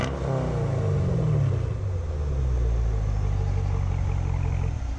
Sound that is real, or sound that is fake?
real